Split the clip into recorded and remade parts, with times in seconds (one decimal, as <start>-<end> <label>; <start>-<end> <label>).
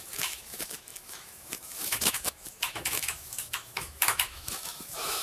0.0-5.2 remade